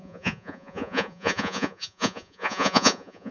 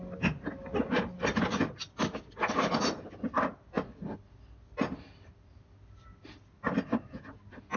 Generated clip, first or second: first